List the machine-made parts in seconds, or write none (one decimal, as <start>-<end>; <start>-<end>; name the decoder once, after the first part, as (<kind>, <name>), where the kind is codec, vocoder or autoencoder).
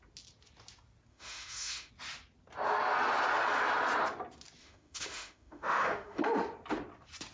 1.1-1.9 (autoencoder, DAC-VAE); 4.6-6.2